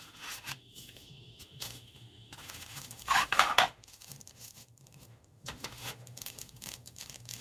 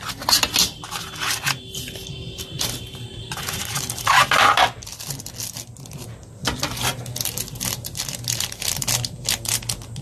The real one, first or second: second